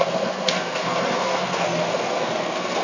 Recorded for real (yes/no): no